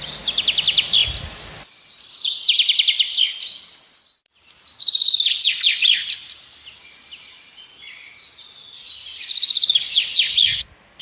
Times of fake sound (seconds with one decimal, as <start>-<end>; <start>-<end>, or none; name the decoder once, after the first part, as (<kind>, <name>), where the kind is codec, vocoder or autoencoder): 1.0-5.5 (vocoder, BigVGAN v2)